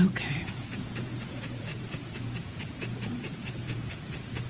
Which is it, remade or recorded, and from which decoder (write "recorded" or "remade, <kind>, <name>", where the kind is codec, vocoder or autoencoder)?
remade, vocoder, Vocos